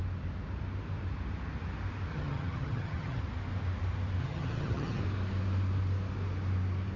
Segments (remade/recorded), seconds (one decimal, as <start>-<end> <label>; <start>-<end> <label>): 0.0-2.1 recorded; 2.1-3.2 remade; 3.2-4.2 recorded; 4.2-5.0 remade; 5.0-7.0 recorded